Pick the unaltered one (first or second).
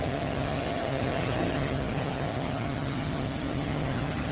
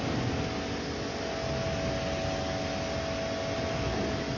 second